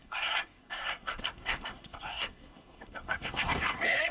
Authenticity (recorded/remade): remade